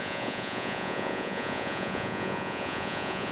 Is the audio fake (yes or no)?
yes